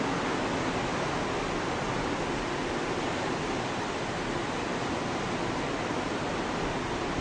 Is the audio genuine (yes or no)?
yes